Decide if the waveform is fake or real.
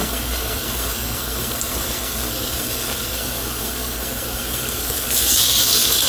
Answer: fake